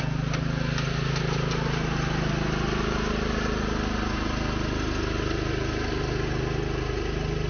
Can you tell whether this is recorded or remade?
recorded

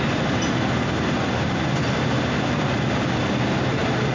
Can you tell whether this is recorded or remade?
recorded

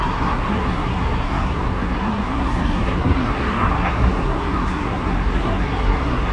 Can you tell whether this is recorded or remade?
remade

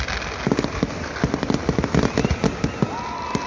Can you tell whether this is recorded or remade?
recorded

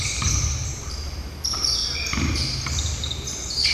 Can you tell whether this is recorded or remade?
recorded